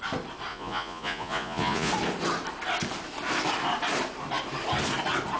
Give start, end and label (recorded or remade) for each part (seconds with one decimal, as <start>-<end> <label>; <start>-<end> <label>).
0.0-0.5 recorded; 0.5-1.9 remade; 1.9-5.4 recorded